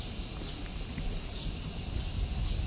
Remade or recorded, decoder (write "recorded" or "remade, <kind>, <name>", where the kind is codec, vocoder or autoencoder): recorded